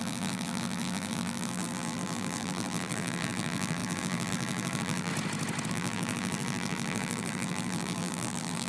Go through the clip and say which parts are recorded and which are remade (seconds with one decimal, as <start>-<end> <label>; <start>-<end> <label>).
0.0-5.1 remade; 5.1-5.7 recorded; 5.7-8.7 remade

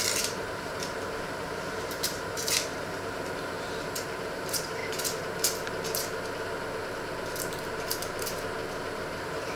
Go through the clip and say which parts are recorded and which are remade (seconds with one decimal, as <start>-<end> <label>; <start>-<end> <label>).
0.0-4.8 remade; 4.8-9.2 recorded; 9.2-9.6 remade

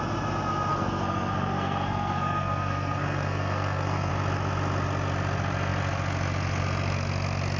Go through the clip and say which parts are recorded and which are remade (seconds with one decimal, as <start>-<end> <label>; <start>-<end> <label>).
0.0-0.7 recorded; 0.7-4.1 remade; 4.1-7.6 recorded

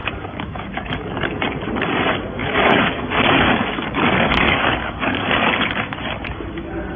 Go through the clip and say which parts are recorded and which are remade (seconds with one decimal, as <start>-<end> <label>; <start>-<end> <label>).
0.0-1.4 remade; 1.4-2.4 recorded; 2.4-5.7 remade; 5.7-7.0 recorded

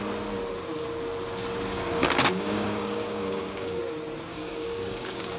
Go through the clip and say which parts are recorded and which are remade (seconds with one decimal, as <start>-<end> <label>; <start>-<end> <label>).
0.0-1.7 recorded; 1.7-3.8 remade; 3.8-4.3 recorded; 4.3-5.4 remade